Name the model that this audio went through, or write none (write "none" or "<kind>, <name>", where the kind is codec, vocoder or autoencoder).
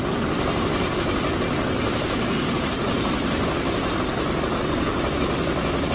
none